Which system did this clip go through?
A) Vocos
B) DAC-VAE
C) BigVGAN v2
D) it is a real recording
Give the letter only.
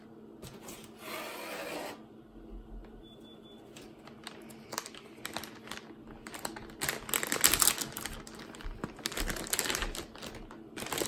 D